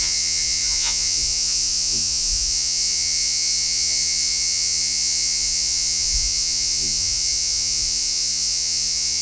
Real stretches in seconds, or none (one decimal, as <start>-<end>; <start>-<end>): none